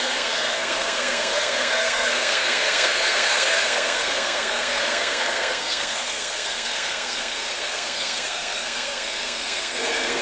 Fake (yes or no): yes